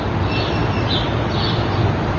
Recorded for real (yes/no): yes